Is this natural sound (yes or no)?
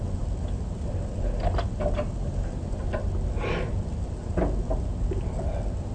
yes